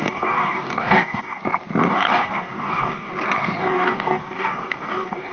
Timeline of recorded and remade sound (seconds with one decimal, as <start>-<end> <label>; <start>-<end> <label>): 0.0-1.4 remade; 1.4-1.9 recorded; 1.9-3.1 remade; 3.1-3.6 recorded; 3.6-5.3 remade